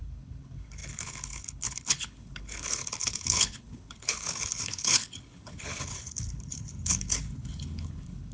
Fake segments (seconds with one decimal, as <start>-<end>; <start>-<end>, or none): 0.0-8.3